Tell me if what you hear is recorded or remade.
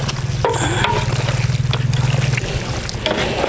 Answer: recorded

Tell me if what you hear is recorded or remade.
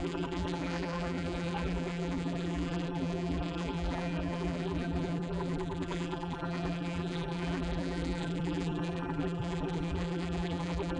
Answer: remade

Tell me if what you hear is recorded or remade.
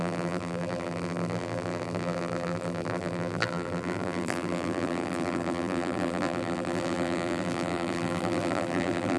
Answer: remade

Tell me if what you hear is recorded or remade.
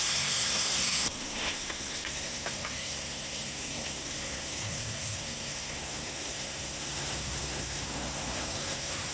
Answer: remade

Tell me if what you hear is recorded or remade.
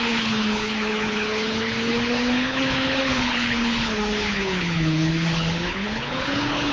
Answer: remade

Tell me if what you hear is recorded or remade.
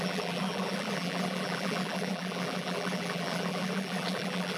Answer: remade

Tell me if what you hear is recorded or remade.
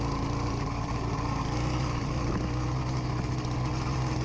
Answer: recorded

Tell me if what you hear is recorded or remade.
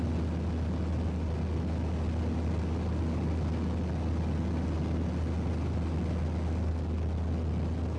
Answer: recorded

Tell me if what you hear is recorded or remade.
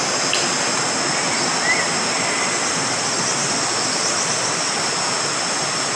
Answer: recorded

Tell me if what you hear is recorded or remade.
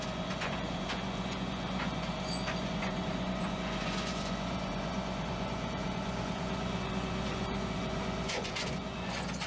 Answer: remade